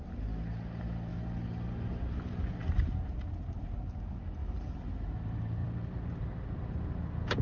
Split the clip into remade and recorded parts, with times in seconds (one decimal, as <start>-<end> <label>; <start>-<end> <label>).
0.0-2.6 recorded; 2.6-3.7 remade; 3.7-4.4 recorded; 4.4-5.1 remade; 5.1-5.6 recorded; 5.6-6.2 remade; 6.2-7.4 recorded